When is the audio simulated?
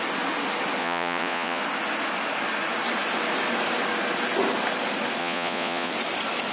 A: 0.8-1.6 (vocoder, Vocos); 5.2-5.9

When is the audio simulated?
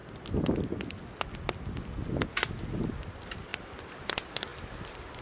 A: none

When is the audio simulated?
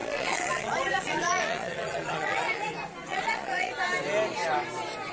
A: 0.0-2.7 (vocoder, Vocos); 3.1-3.7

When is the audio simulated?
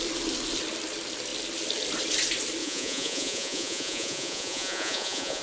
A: 2.6-5.4 (vocoder, Vocos)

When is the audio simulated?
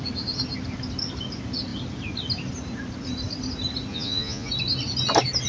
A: 3.9-4.5 (vocoder, Vocos)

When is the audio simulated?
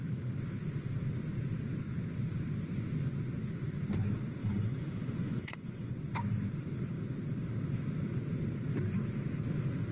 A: 4.4-5.9 (vocoder, Vocos)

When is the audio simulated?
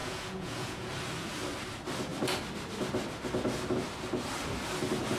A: 0.0-0.9 (vocoder, Vocos)